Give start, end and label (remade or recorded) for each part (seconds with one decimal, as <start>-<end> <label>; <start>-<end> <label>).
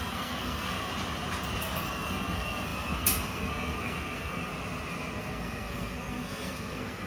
0.0-0.9 remade; 0.9-1.6 recorded; 1.6-4.5 remade; 4.5-5.2 recorded; 5.2-7.1 remade